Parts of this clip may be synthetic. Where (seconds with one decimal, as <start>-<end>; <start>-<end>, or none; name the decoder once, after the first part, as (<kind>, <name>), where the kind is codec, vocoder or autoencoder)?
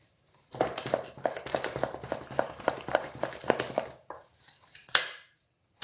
0.0-5.8 (vocoder, BigVGAN v2)